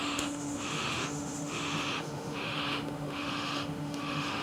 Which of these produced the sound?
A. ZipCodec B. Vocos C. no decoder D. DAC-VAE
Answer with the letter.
D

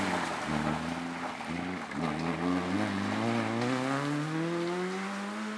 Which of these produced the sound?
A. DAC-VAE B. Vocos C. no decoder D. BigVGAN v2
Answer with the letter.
C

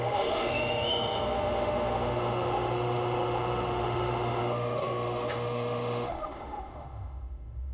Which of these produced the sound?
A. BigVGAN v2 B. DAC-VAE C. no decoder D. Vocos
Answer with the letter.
B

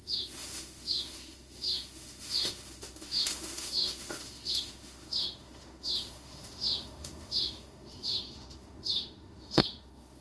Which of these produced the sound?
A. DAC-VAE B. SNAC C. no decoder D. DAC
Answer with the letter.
A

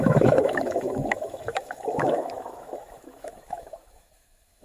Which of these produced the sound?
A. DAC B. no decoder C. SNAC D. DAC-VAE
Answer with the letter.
D